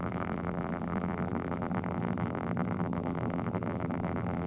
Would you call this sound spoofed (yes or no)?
yes